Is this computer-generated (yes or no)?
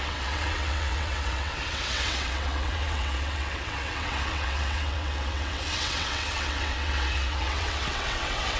yes